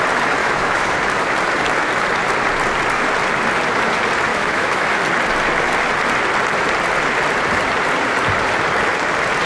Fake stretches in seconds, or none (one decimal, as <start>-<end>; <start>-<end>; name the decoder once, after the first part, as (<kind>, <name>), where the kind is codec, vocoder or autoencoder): 0.4-0.9 (autoencoder, DAC-VAE); 4.3-5.0